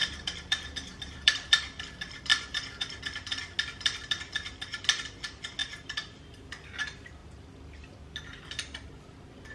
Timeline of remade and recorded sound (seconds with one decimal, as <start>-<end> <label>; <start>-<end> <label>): 0.0-1.8 remade; 1.8-2.3 recorded; 2.3-3.0 remade; 3.0-5.6 recorded; 5.6-6.1 remade; 6.1-7.2 recorded; 7.2-8.0 remade; 8.0-9.5 recorded